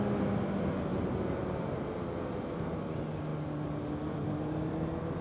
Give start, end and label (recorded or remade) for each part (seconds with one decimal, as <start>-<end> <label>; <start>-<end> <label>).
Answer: 0.0-0.9 recorded; 0.9-2.0 remade; 2.0-5.2 recorded